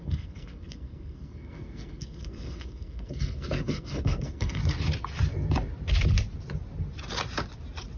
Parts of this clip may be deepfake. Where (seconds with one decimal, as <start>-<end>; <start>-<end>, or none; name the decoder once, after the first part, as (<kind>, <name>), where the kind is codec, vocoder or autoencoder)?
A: 0.0-4.6 (codec, SNAC)

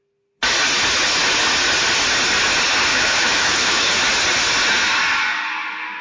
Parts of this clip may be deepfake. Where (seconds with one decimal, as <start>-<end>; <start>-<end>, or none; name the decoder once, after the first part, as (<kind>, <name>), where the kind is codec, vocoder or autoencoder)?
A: 2.9-3.9 (autoencoder, DAC-VAE)

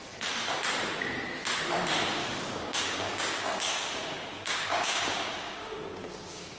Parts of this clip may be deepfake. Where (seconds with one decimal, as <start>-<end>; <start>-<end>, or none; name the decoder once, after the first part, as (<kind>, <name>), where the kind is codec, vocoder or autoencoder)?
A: 2.2-6.6 (codec, DAC)

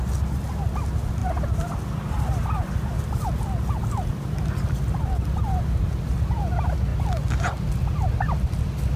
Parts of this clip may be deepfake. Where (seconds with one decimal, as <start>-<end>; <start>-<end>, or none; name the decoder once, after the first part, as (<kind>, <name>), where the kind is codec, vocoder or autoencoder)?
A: 1.2-5.6 (vocoder, BigVGAN v2); 6.9-7.5